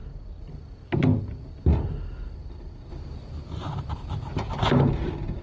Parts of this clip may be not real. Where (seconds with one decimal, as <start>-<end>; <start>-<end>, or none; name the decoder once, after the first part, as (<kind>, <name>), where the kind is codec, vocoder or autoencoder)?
none